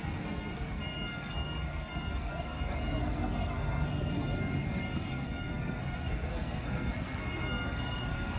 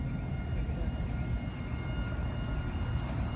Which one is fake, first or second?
first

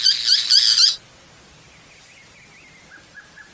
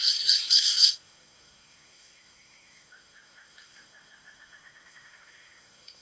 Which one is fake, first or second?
second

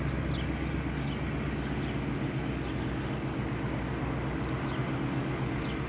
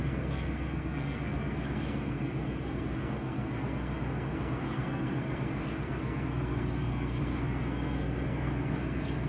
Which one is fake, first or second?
second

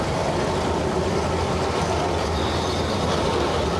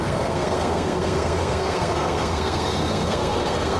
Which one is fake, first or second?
second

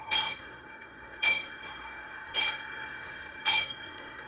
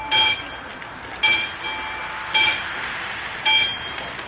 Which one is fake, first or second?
first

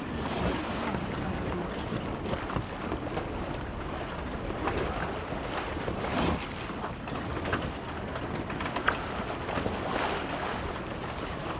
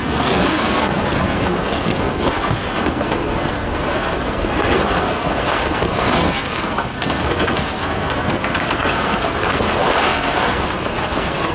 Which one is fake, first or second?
second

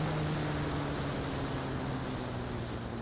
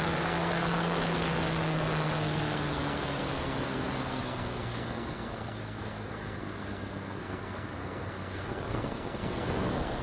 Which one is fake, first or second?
second